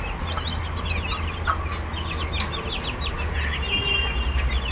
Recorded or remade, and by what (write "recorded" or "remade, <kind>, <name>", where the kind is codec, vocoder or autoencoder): recorded